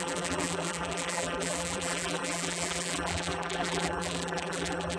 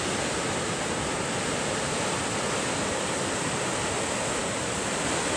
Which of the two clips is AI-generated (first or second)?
first